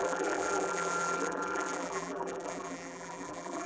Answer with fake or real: fake